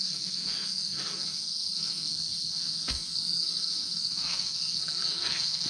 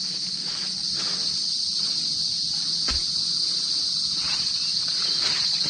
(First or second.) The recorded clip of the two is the second